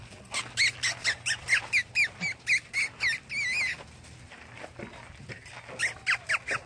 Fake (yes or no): no